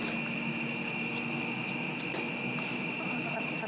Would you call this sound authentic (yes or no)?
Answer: yes